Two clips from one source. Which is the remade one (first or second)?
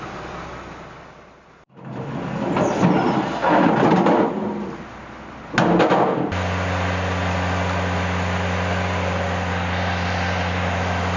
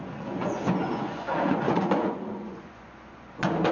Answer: second